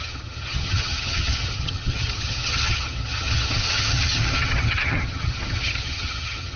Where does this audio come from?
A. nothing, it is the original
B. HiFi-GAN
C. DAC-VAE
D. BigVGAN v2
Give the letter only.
B